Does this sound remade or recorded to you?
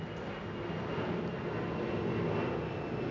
recorded